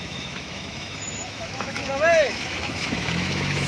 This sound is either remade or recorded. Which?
remade